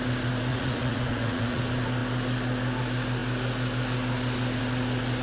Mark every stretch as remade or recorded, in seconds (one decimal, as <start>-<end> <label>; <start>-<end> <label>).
0.0-0.5 recorded; 0.5-1.6 remade; 1.6-5.2 recorded